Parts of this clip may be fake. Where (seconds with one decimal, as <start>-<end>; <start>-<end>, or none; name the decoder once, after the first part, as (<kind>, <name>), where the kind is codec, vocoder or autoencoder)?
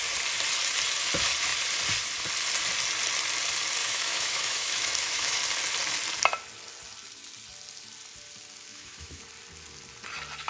3.8-5.4 (autoencoder, DAC-VAE); 8.7-9.2